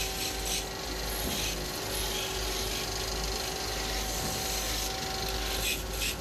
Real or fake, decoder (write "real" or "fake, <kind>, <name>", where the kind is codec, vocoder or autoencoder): real